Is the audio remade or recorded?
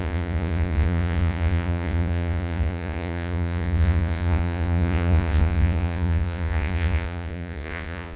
remade